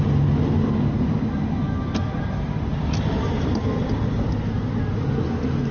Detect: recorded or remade recorded